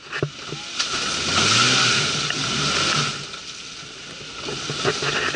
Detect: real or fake real